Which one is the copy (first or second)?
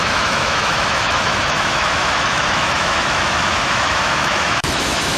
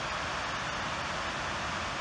first